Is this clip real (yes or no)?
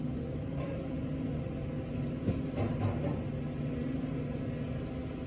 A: yes